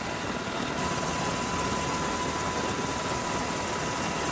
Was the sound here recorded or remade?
recorded